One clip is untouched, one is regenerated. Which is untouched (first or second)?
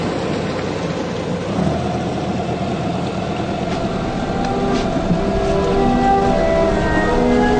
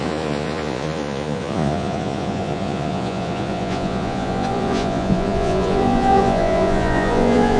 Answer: first